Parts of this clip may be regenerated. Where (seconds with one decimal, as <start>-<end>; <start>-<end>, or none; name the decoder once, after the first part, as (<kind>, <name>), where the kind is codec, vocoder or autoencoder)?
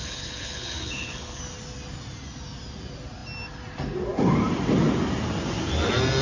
0.0-1.4 (codec, HILCodec)